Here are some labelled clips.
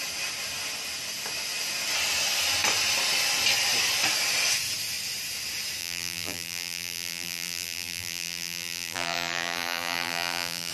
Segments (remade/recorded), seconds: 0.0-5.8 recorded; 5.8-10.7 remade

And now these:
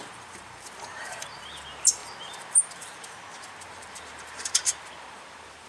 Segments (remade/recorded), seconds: 0.0-5.7 remade